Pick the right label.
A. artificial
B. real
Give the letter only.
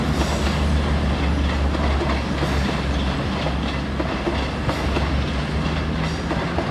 B